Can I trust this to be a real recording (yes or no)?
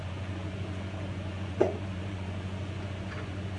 no